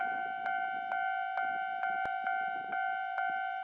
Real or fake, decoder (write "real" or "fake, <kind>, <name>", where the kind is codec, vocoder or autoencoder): real